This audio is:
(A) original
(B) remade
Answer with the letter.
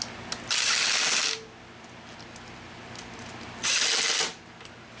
A